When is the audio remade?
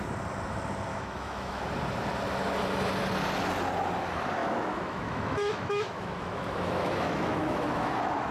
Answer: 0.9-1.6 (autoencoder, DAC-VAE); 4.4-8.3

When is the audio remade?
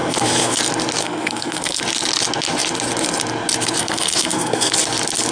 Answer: 0.0-0.6 (codec, SNAC); 1.0-1.8; 3.8-4.7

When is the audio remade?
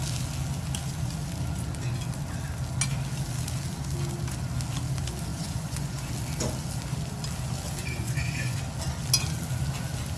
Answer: 5.3-6.1 (vocoder, Vocos); 7.8-8.6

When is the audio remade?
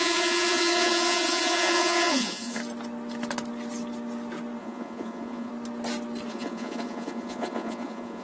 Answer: 0.0-2.6 (vocoder, Vocos); 4.6-5.5; 6.3-8.2